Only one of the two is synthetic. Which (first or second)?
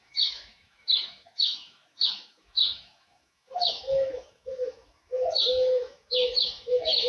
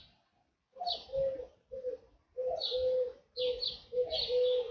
first